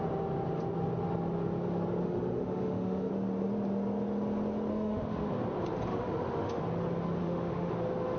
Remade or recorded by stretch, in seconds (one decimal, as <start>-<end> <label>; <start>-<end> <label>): 0.0-2.0 recorded; 2.0-3.1 remade; 3.1-4.7 recorded; 4.7-5.3 remade; 5.3-5.9 recorded; 5.9-6.6 remade; 6.6-7.2 recorded; 7.2-7.7 remade; 7.7-8.2 recorded